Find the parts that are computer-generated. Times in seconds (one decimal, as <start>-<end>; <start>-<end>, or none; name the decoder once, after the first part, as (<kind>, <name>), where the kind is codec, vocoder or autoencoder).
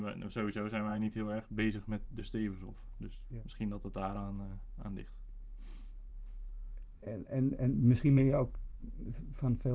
0.9-2.2 (vocoder, Vocos); 7.5-8.9